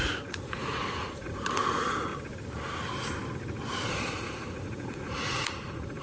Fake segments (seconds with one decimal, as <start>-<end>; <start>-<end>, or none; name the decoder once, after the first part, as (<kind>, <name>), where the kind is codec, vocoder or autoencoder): 0.0-2.1 (vocoder, Vocos); 3.9-6.0